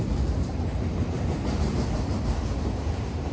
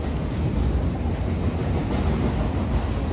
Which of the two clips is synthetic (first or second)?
first